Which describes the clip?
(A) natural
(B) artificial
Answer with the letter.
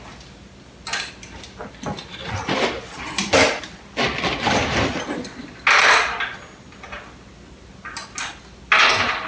A